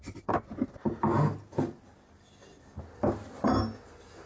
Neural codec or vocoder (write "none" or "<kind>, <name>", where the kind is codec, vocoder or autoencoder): none